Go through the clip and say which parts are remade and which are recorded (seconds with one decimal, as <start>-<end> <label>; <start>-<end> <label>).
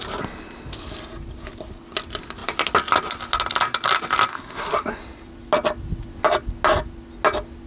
0.0-4.3 recorded; 4.3-5.0 remade; 5.0-7.7 recorded